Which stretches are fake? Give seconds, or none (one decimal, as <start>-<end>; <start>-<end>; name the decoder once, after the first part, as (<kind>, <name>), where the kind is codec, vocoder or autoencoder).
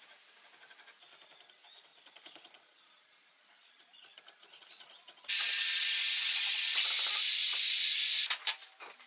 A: 1.9-6.9 (vocoder, Vocos); 7.4-8.0